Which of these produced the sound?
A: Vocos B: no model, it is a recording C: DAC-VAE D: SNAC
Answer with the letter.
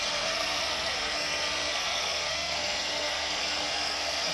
D